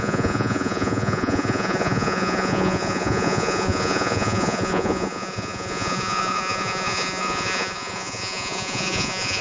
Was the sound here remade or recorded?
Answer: remade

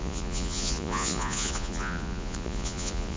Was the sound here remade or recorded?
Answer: remade